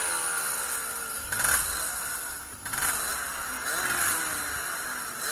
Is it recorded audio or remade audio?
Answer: recorded